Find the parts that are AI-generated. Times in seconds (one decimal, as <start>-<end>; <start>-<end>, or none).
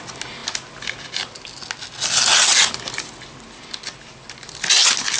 none